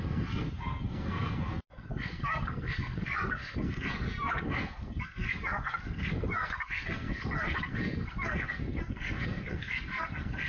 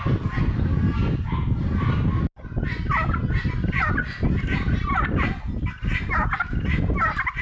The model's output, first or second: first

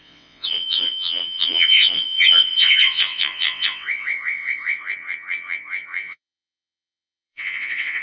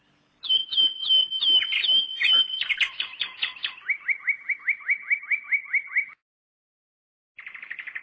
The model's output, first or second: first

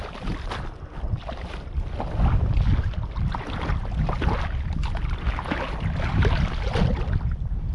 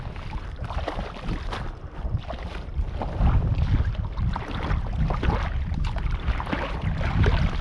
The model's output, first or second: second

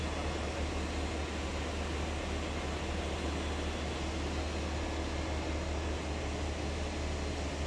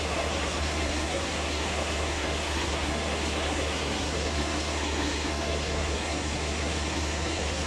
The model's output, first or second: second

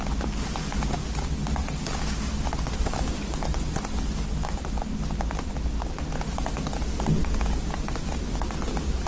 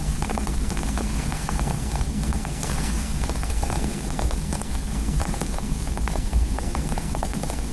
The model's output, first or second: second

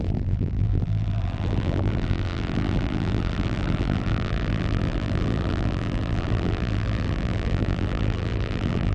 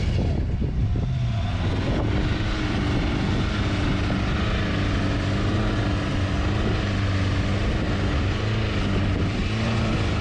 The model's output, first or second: first